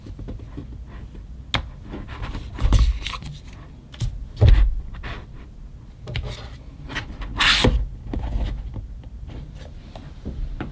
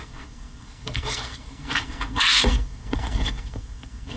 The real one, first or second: first